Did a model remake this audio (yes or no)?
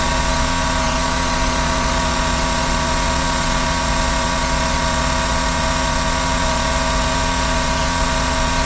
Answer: yes